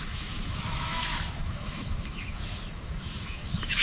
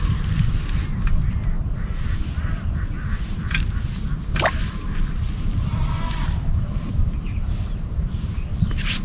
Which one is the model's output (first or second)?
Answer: first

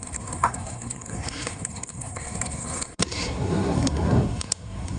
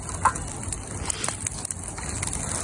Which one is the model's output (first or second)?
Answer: first